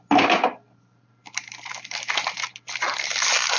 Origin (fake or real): real